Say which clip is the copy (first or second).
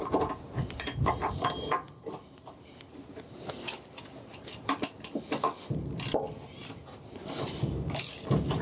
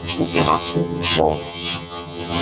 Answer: second